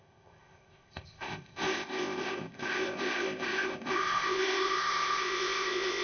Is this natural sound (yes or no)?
no